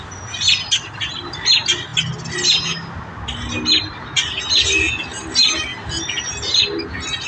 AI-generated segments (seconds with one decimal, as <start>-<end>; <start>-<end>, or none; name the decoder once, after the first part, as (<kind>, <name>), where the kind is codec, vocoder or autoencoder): 5.7-6.6 (vocoder, BigVGAN v2)